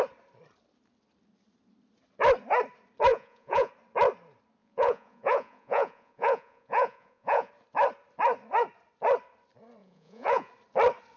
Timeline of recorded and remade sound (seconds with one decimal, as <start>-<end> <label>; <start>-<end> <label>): 0.0-3.1 recorded; 3.1-3.7 remade; 3.7-4.6 recorded; 4.6-7.5 remade; 7.5-9.8 recorded; 9.8-10.5 remade; 10.5-11.2 recorded